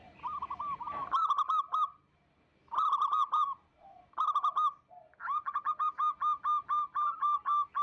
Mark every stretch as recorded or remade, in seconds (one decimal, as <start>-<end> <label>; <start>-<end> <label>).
0.0-7.8 recorded